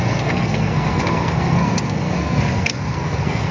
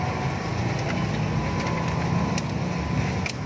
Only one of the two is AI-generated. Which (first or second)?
first